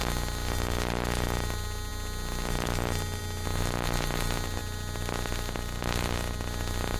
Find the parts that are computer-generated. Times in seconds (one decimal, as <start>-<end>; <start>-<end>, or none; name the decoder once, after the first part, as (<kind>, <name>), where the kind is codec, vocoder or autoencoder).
none